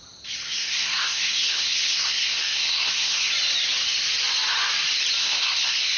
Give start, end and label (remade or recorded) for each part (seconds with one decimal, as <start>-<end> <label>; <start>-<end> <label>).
0.0-0.4 recorded; 0.4-3.3 remade; 3.3-5.2 recorded; 5.2-6.0 remade